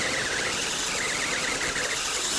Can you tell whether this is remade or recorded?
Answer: recorded